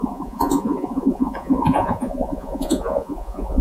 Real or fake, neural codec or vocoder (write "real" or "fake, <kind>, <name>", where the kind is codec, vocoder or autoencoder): fake, vocoder, Vocos